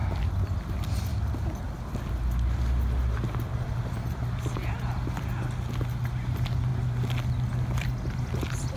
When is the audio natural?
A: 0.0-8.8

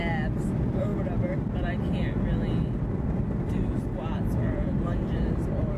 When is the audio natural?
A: 0.0-5.8

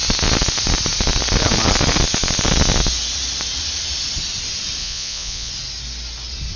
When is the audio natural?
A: 0.0-4.8; 5.5-6.6

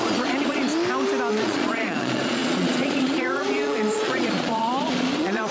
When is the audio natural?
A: 0.7-1.3

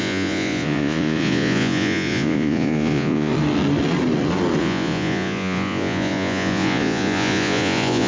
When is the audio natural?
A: 3.3-4.6

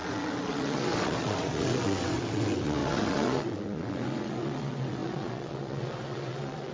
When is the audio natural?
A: none